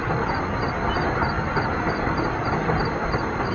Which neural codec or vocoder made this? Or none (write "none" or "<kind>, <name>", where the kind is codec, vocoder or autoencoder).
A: none